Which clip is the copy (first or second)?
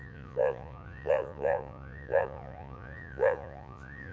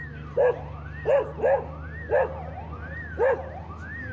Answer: first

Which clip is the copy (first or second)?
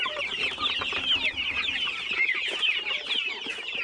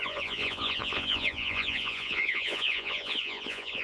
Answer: second